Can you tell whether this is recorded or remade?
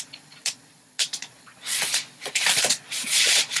remade